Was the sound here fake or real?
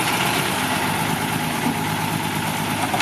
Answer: real